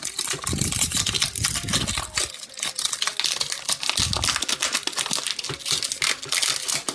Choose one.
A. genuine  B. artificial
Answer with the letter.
A